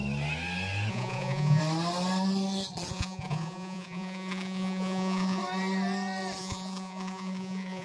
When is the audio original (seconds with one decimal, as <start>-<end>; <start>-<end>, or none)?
0.0-0.9; 1.6-2.9; 5.4-6.4